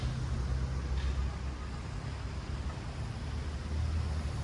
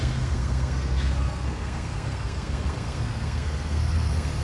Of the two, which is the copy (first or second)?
second